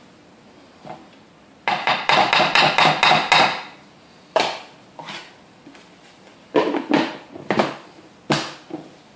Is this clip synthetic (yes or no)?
no